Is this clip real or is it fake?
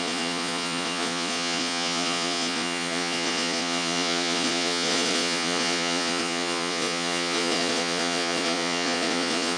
fake